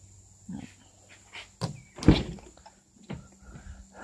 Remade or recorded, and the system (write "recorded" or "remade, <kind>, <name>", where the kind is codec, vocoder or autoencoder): recorded